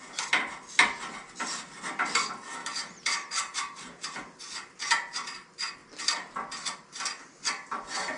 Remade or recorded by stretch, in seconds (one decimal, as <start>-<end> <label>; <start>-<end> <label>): 0.0-2.6 recorded; 2.6-4.4 remade; 4.4-5.8 recorded; 5.8-6.3 remade; 6.3-8.2 recorded